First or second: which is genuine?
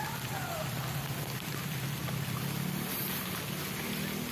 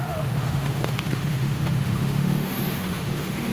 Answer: first